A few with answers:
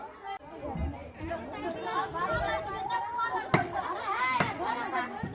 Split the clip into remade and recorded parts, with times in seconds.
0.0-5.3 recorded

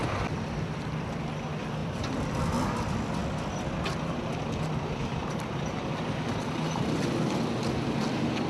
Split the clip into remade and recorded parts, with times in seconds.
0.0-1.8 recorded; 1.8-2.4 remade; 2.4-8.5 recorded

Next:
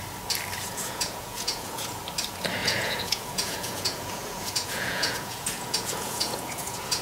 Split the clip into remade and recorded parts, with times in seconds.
0.0-0.6 recorded; 0.6-2.0 remade; 2.0-2.6 recorded; 2.6-7.0 remade

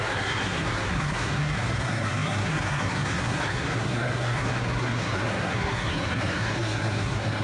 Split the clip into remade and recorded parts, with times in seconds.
0.0-7.4 remade

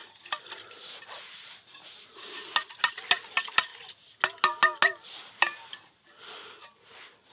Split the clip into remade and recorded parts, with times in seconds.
0.0-7.3 recorded

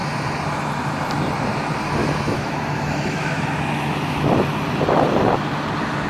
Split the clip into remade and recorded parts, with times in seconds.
0.0-2.0 recorded; 2.0-4.3 remade; 4.3-6.1 recorded

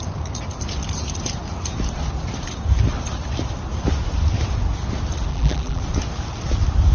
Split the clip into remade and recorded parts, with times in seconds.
0.0-5.3 recorded; 5.3-5.8 remade; 5.8-6.9 recorded